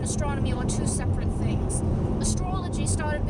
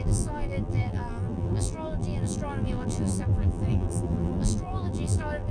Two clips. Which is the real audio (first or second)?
first